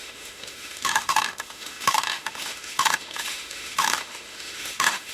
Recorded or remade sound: remade